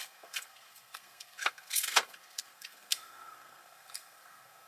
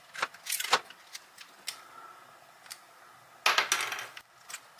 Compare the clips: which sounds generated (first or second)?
first